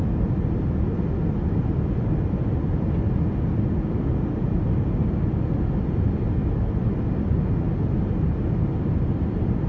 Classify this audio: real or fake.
real